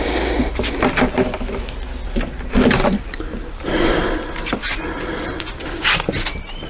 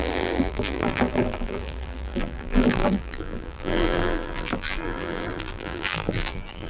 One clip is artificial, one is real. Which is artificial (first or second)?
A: second